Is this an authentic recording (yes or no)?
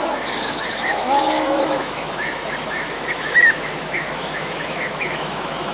no